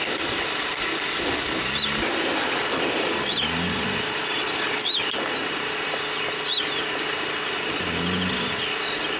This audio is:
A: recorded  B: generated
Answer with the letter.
A